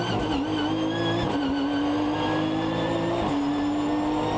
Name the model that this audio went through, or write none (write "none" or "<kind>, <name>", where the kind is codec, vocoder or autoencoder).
none